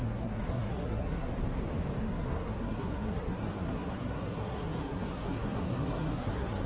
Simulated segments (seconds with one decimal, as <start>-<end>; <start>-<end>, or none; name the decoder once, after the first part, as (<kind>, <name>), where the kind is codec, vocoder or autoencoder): 0.0-1.3 (codec, SNAC); 2.0-6.7